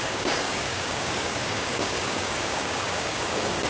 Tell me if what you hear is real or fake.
fake